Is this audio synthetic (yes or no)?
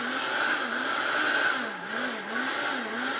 no